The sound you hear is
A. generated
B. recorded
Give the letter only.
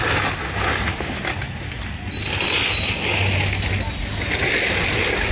B